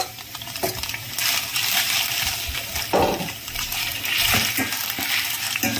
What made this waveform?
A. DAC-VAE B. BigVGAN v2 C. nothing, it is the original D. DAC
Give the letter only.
C